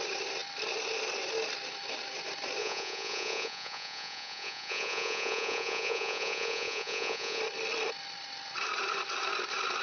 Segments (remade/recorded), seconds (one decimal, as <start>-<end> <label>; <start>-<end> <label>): 0.0-2.6 recorded; 2.6-7.4 remade; 7.4-9.8 recorded